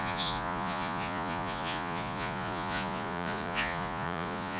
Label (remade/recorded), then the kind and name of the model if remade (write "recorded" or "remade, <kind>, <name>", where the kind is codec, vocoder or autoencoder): remade, vocoder, Vocos